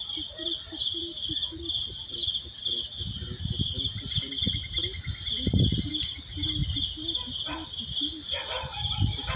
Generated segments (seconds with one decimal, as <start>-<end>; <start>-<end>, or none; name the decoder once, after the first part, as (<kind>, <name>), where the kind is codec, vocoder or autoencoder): none